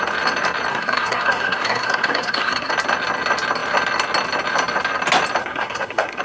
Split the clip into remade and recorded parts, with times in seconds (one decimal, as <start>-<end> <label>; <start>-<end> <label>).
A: 0.0-0.7 recorded; 0.7-2.7 remade; 2.7-5.4 recorded; 5.4-6.2 remade

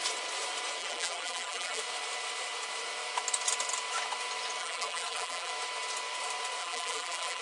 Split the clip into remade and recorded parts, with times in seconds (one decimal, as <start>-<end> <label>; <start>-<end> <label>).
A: 0.0-0.8 recorded; 0.8-1.8 remade; 1.8-4.6 recorded; 4.6-5.5 remade; 5.5-6.6 recorded; 6.6-7.4 remade

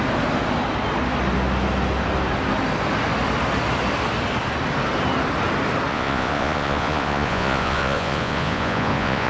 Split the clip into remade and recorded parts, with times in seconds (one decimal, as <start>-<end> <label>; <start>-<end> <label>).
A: 0.0-5.9 recorded; 5.9-9.3 remade

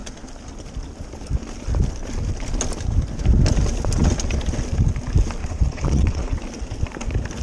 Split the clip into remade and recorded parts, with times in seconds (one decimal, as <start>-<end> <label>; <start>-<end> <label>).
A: 0.0-5.4 recorded; 5.4-6.4 remade; 6.4-7.4 recorded

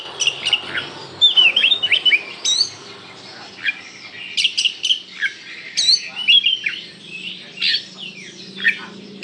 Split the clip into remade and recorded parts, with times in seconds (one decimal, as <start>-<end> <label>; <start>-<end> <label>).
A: 0.0-1.4 recorded; 1.4-2.2 remade; 2.2-9.2 recorded

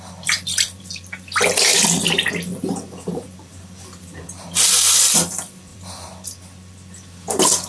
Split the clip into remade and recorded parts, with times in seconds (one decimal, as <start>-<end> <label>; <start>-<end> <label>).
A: 0.0-7.7 remade

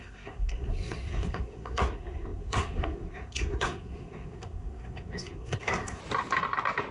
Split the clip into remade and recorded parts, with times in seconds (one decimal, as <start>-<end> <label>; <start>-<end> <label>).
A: 0.0-6.0 remade; 6.0-6.9 recorded

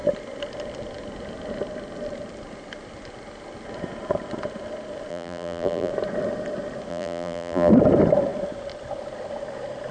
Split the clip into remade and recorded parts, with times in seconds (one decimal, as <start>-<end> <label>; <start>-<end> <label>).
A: 0.0-5.1 recorded; 5.1-5.9 remade; 5.9-6.9 recorded; 6.9-7.7 remade; 7.7-9.9 recorded